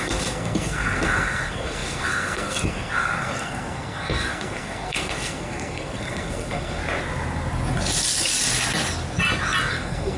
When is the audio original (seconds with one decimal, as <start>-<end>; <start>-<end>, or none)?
6.8-9.7